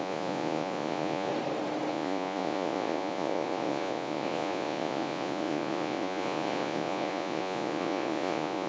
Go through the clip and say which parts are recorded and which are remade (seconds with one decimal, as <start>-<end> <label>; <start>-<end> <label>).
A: 0.0-1.3 remade; 1.3-1.9 recorded; 1.9-8.7 remade